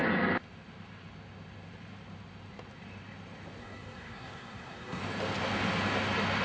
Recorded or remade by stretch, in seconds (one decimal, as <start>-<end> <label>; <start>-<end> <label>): 0.0-3.6 recorded; 3.6-5.0 remade; 5.0-6.4 recorded